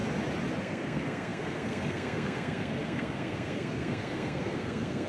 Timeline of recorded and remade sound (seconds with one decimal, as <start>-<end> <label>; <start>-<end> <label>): 0.0-0.6 recorded; 0.6-5.1 remade